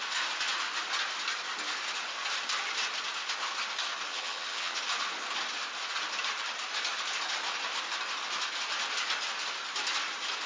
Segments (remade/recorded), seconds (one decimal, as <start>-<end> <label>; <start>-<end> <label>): 0.0-4.1 recorded; 4.1-4.8 remade; 4.8-10.5 recorded